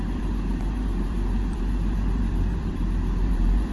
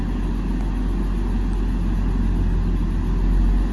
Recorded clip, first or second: second